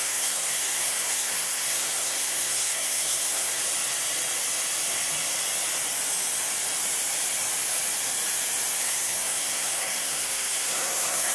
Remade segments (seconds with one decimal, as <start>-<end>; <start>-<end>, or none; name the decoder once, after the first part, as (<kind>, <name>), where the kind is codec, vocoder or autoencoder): 0.0-3.6 (codec, SNAC); 8.8-11.3